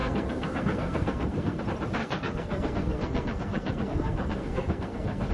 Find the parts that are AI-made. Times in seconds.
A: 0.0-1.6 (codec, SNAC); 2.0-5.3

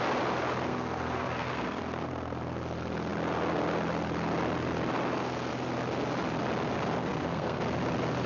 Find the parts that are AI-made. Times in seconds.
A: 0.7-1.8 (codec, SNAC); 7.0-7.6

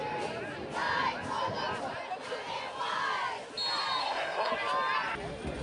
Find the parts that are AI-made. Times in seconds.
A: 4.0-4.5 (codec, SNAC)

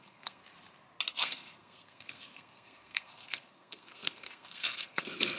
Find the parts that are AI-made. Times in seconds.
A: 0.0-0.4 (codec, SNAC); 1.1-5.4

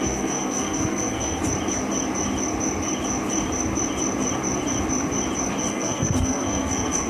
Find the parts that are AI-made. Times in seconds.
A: 0.0-1.4 (codec, SNAC); 5.7-7.1